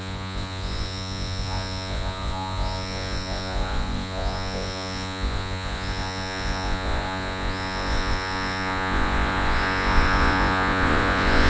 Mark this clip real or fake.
fake